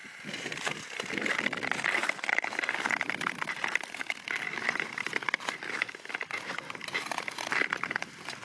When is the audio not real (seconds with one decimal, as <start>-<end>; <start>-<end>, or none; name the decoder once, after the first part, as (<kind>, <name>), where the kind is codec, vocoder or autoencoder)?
0.0-1.4 (vocoder, BigVGAN v2); 2.0-5.9